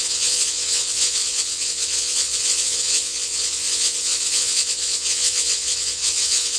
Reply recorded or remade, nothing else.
remade